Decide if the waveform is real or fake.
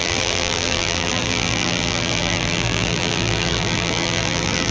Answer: fake